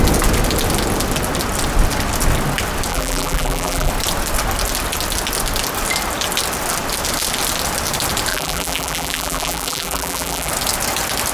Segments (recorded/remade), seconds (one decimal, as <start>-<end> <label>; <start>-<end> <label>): 0.0-2.9 recorded; 2.9-3.9 remade; 3.9-8.3 recorded; 8.3-10.5 remade; 10.5-11.3 recorded